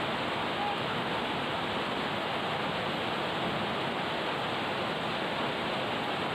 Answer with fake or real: real